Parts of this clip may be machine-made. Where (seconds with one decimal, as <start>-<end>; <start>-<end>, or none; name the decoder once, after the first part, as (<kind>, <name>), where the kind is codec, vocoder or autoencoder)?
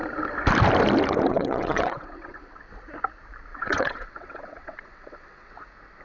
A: 1.3-2.7 (vocoder, WaveNeXt); 3.5-5.5